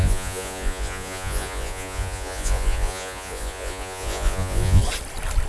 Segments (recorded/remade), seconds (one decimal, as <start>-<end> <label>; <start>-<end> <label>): 0.0-4.8 remade; 4.8-5.5 recorded